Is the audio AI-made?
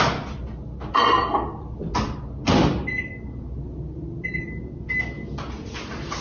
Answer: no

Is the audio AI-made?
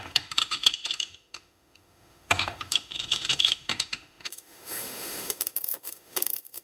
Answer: yes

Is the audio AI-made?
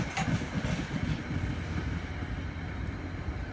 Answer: no